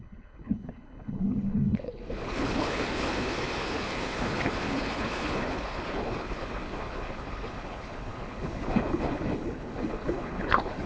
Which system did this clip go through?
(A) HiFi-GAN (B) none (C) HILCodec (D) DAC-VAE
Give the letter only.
C